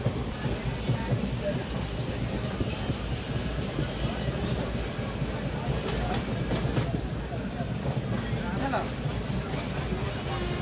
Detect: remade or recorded recorded